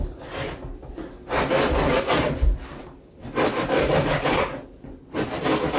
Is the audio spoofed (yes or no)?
no